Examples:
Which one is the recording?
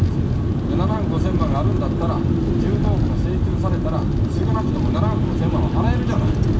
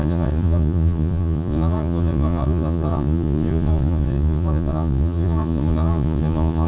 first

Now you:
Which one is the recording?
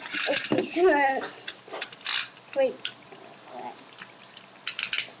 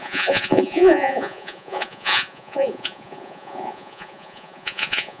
first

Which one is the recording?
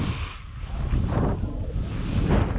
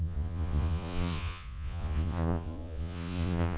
first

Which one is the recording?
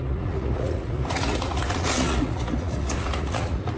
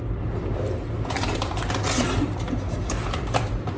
second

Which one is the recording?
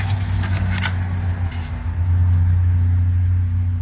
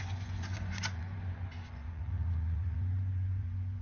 first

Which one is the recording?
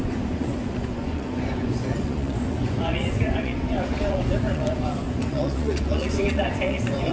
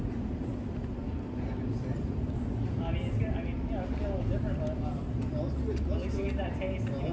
second